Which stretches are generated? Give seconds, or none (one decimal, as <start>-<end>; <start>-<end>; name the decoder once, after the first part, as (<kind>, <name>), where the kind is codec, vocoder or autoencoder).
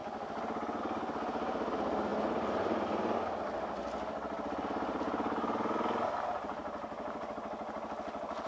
6.6-7.3 (vocoder, BigVGAN v2)